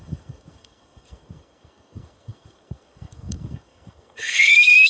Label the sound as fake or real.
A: fake